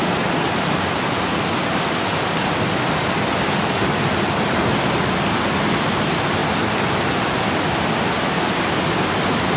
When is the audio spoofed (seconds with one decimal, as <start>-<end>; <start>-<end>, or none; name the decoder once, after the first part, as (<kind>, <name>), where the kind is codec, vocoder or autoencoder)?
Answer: none